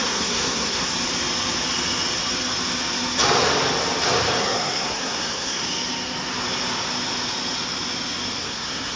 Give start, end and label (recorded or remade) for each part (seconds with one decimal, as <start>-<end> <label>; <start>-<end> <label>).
0.0-0.9 remade; 0.9-4.4 recorded; 4.4-5.6 remade; 5.6-8.4 recorded; 8.4-9.0 remade